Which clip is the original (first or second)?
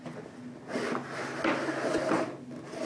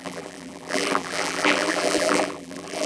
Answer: first